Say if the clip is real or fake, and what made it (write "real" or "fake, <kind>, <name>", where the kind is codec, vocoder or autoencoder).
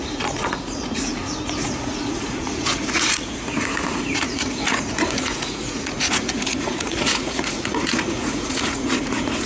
fake, vocoder, Vocos